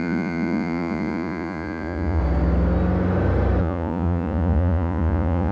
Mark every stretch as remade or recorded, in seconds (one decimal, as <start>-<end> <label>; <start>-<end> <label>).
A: 0.0-2.2 remade; 2.2-3.6 recorded; 3.6-5.5 remade